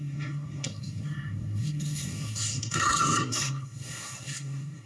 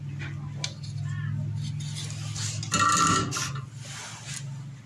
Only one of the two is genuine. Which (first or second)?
second